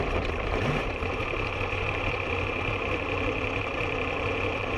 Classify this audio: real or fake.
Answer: fake